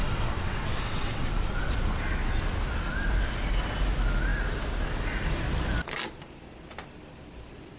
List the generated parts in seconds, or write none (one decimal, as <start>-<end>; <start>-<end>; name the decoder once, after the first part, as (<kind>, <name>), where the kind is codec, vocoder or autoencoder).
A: 0.0-1.7 (vocoder, WaveNeXt)